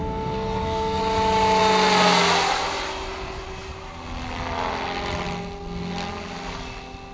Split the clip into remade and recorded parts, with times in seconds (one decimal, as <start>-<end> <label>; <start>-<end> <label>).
0.0-1.0 remade; 1.0-7.1 recorded